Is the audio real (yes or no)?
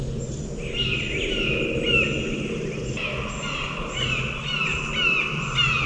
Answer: yes